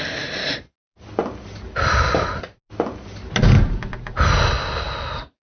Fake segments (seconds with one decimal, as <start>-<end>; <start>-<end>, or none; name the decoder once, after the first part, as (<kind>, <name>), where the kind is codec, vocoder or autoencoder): none